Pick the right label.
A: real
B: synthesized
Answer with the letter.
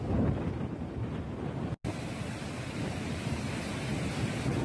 A